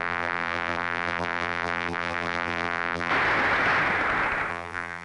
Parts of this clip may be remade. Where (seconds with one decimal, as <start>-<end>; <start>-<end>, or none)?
0.0-3.1; 4.5-5.0